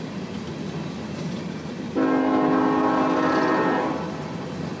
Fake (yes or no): no